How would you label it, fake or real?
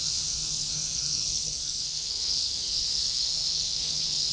fake